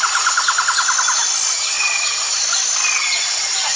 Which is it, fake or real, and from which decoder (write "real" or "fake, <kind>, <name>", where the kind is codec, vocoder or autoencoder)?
real